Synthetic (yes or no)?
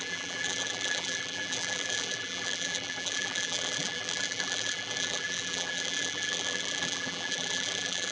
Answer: yes